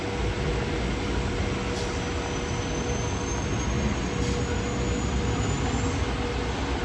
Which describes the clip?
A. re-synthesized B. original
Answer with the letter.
B